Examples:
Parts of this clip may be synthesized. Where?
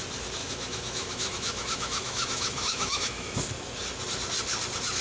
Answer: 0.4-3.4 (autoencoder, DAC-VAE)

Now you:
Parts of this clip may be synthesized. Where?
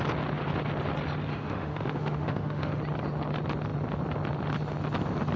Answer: 1.3-2.8 (autoencoder, DAC-VAE)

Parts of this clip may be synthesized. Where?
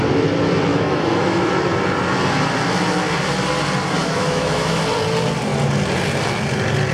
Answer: 0.7-1.5 (autoencoder, DAC-VAE); 4.0-4.8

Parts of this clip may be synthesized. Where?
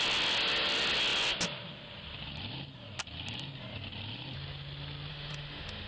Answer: 5.1-5.9 (autoencoder, DAC-VAE)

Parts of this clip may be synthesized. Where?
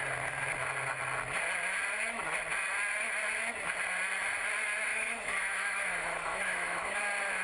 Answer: 4.9-7.0 (autoencoder, DAC-VAE)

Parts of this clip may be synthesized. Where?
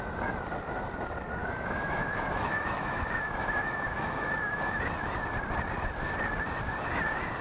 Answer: 1.4-4.8 (autoencoder, DAC-VAE)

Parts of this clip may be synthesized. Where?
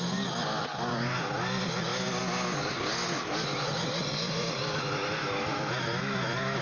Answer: 5.2-6.6 (autoencoder, DAC-VAE)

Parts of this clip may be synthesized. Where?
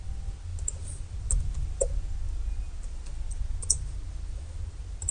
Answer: none